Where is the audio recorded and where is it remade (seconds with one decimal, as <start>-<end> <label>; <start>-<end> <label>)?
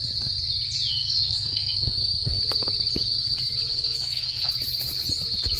0.0-0.9 recorded; 0.9-2.4 remade; 2.4-3.7 recorded; 3.7-4.5 remade; 4.5-5.6 recorded